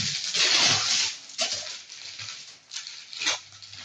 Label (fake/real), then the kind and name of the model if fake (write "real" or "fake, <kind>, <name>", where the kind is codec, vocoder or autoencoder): real